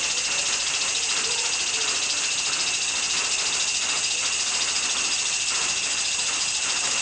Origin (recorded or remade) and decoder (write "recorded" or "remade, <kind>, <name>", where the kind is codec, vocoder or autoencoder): recorded